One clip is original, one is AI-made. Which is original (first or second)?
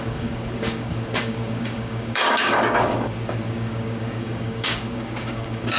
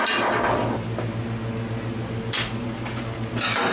second